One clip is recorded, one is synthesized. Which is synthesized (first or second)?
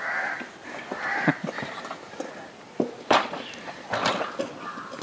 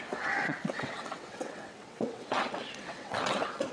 second